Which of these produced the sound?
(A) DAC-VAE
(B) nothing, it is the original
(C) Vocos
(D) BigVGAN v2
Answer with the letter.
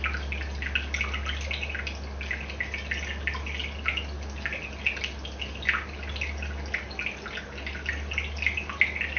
B